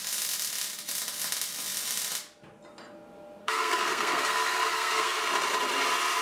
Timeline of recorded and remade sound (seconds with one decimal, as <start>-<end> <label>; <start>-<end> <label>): 0.0-3.4 recorded; 3.4-5.2 remade; 5.2-6.2 recorded